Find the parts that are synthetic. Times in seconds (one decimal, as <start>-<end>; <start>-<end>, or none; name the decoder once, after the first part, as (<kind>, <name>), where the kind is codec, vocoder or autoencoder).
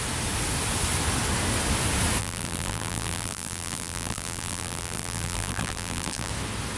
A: 2.2-6.3 (vocoder, BigVGAN v2)